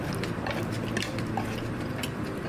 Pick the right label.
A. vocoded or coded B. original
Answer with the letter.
B